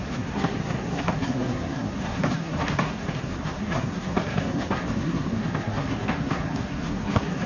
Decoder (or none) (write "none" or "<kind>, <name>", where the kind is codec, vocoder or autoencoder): codec, SNAC